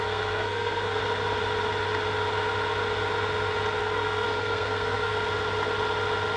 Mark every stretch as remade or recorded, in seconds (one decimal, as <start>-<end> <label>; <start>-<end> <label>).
0.0-1.0 remade; 1.0-3.8 recorded; 3.8-5.1 remade; 5.1-6.4 recorded